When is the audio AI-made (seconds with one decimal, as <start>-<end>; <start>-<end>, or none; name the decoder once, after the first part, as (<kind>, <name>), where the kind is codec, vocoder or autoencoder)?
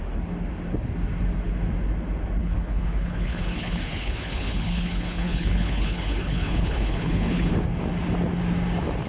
2.4-7.5 (codec, HILCodec)